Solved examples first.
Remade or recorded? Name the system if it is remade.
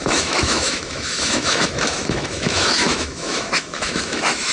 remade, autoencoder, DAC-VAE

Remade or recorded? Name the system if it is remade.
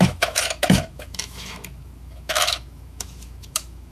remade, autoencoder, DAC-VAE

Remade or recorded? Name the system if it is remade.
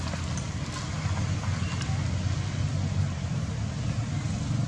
recorded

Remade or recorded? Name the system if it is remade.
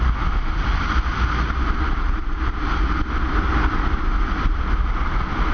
recorded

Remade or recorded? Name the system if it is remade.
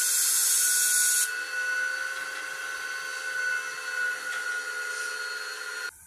recorded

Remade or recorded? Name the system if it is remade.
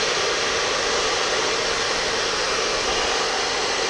recorded